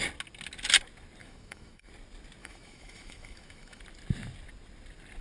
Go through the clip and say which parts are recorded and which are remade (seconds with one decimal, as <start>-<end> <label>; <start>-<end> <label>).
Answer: 0.0-1.2 recorded; 1.2-1.9 remade; 1.9-2.4 recorded; 2.4-3.8 remade; 3.8-5.2 recorded